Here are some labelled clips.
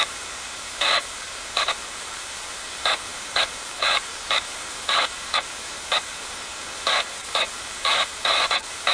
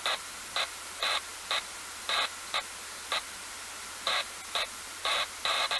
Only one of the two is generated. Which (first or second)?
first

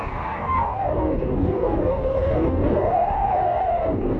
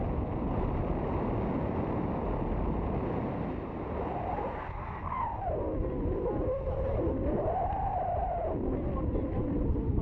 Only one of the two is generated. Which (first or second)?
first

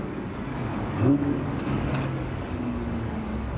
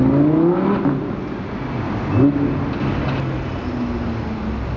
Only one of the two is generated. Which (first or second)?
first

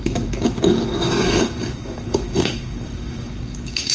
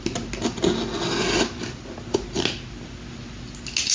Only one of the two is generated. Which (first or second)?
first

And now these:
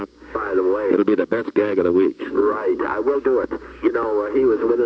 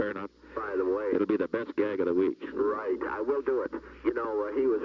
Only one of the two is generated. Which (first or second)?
first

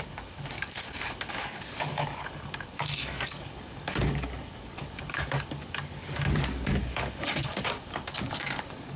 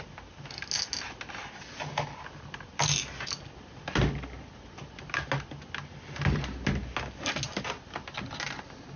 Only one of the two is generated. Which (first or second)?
first